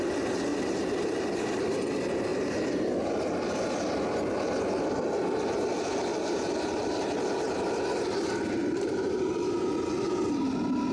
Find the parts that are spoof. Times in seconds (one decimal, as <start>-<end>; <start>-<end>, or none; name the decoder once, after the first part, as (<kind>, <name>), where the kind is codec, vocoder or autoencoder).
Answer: 0.5-1.1 (vocoder, BigVGAN v2); 6.1-6.9; 8.6-9.4